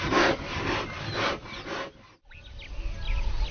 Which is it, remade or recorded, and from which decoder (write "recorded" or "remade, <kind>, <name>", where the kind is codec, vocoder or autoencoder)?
recorded